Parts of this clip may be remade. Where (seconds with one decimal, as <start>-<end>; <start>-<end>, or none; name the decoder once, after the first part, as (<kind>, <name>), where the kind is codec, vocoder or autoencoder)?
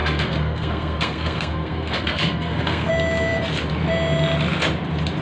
0.0-2.9 (codec, SNAC)